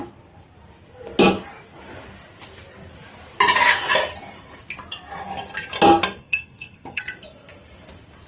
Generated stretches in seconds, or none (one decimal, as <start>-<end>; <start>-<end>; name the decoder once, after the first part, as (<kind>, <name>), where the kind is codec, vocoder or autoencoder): 6.2-7.0 (codec, SNAC)